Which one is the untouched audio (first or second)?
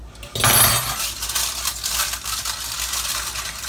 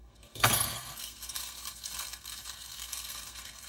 first